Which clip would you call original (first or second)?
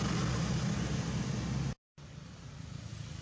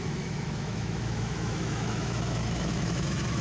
first